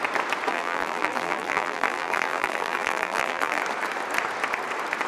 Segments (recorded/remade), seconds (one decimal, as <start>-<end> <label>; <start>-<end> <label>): 0.0-0.5 recorded; 0.5-3.6 remade; 3.6-5.1 recorded